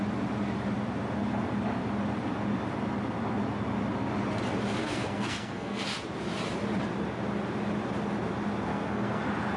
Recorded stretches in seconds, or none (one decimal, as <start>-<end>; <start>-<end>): 0.0-4.8; 5.8-8.7; 9.2-9.6